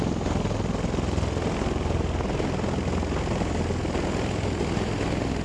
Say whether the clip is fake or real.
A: real